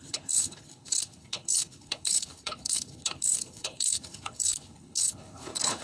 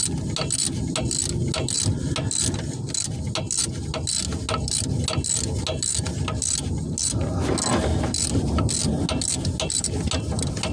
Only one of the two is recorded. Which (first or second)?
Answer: second